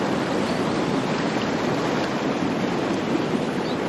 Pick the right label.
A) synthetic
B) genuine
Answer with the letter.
B